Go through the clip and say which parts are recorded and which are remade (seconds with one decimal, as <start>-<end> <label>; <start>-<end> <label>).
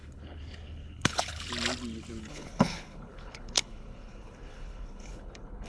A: 0.0-1.5 remade; 1.5-2.2 recorded; 2.2-5.7 remade